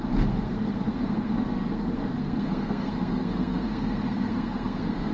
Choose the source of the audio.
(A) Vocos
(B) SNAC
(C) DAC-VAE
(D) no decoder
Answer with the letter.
B